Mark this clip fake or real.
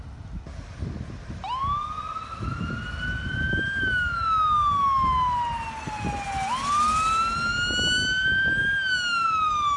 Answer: real